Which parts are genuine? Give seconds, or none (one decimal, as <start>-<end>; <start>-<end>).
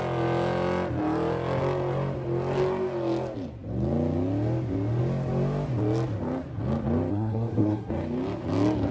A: 0.0-7.1; 7.9-8.9